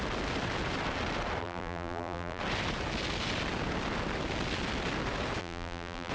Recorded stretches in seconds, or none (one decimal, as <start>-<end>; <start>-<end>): 0.0-1.4; 2.4-5.4